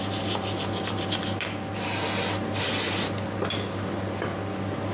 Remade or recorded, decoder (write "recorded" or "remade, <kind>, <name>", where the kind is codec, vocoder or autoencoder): recorded